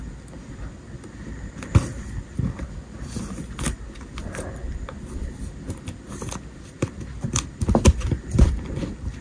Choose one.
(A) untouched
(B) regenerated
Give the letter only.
A